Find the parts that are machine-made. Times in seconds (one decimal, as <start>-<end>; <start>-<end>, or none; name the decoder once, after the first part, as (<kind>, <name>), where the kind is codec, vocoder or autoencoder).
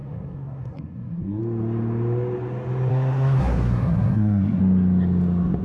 0.0-1.4 (codec, SNAC); 2.9-4.6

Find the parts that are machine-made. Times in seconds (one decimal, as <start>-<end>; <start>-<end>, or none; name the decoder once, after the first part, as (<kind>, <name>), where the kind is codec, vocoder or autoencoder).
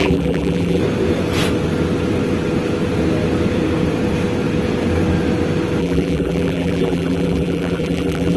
0.0-0.8 (vocoder, BigVGAN v2); 5.8-8.4